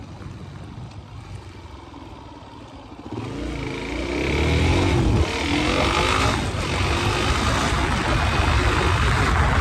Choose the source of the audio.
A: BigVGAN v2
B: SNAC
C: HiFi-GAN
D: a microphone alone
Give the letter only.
D